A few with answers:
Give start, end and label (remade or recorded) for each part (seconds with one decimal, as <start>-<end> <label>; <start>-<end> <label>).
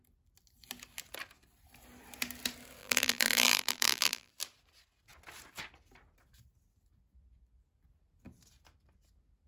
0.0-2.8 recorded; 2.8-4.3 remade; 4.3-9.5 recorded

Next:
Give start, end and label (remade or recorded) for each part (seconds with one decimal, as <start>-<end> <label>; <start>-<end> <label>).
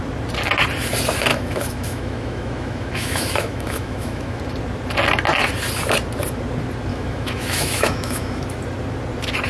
0.0-1.3 recorded; 1.3-4.4 remade; 4.4-6.9 recorded; 6.9-8.4 remade; 8.4-9.5 recorded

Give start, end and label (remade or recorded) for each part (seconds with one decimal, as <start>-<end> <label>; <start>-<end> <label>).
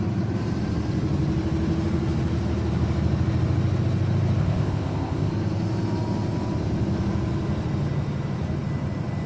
0.0-4.4 recorded; 4.4-5.3 remade; 5.3-9.3 recorded